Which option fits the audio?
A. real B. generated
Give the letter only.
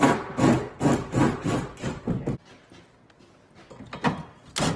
A